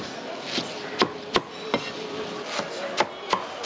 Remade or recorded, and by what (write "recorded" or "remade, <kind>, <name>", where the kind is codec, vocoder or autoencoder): recorded